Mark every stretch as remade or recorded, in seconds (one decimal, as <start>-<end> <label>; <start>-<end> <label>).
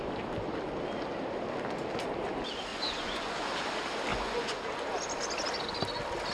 0.0-2.7 recorded; 2.7-3.5 remade; 3.5-4.1 recorded; 4.1-4.6 remade; 4.6-6.3 recorded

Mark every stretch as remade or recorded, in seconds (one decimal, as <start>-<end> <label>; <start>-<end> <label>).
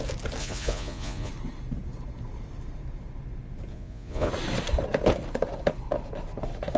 0.0-0.4 recorded; 0.4-1.3 remade; 1.3-3.7 recorded; 3.7-4.3 remade; 4.3-6.8 recorded